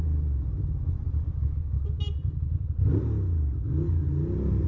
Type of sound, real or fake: real